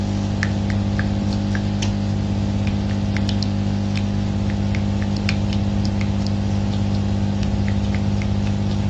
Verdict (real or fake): real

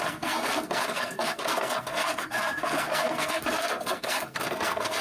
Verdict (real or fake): fake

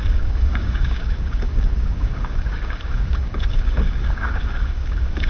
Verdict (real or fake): fake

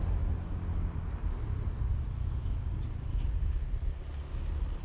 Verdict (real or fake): real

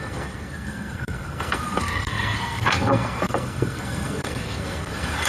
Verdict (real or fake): fake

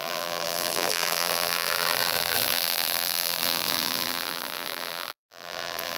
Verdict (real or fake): fake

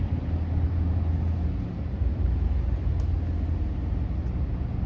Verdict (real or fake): real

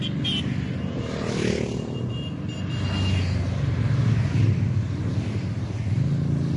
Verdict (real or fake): real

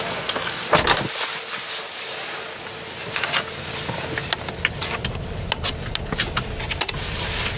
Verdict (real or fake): real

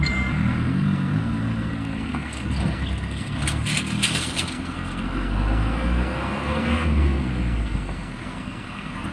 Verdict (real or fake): fake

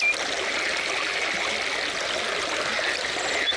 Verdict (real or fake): real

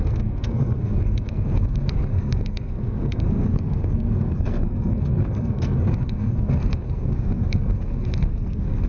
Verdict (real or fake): fake